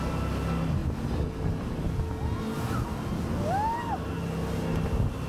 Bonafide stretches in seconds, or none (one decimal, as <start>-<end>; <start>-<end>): 0.0-5.3

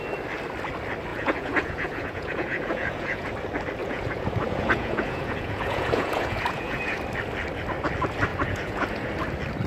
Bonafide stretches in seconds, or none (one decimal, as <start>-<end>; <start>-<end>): 0.0-1.1; 3.3-3.8; 7.0-8.3; 9.1-9.7

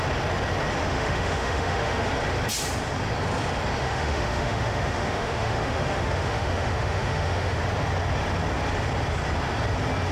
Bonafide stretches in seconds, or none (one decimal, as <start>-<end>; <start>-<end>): 0.0-0.8; 2.1-3.8; 7.6-10.1

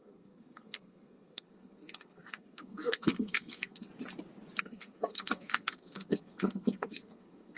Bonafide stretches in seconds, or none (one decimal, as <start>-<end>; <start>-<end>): 3.9-4.6